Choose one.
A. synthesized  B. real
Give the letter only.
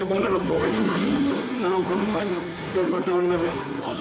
A